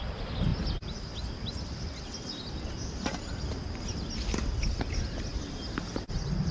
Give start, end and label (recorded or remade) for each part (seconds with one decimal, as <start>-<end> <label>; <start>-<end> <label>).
0.0-6.5 recorded